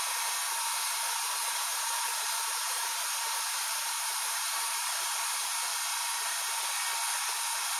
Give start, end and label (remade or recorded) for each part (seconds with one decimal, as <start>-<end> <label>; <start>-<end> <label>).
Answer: 0.0-0.4 recorded; 0.4-5.1 remade; 5.1-7.8 recorded